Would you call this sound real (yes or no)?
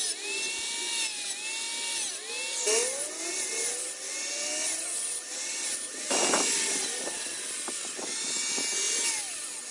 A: yes